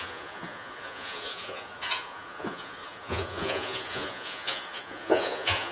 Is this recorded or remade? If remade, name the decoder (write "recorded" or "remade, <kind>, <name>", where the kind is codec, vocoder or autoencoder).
remade, vocoder, Vocos